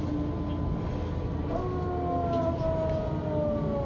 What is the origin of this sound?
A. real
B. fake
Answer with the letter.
A